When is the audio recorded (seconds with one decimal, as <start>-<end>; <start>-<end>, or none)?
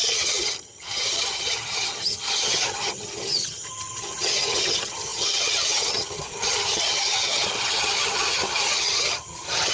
none